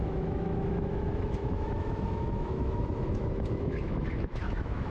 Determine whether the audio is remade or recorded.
remade